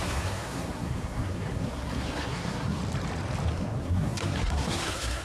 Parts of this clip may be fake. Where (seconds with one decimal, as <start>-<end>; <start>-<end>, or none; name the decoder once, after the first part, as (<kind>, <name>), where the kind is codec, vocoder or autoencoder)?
0.0-2.8 (codec, SNAC); 3.5-5.2